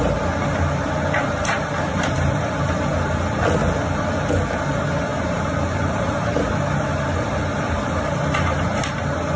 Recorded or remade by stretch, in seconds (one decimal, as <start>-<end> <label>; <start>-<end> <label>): 0.0-1.9 recorded; 1.9-2.7 remade; 2.7-5.1 recorded; 5.1-8.9 remade; 8.9-9.4 recorded